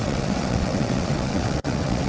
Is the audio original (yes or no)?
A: no